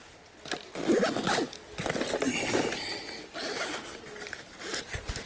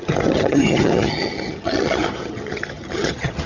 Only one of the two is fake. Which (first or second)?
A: second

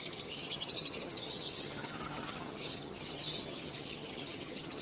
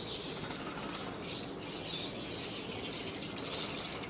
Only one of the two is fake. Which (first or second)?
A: first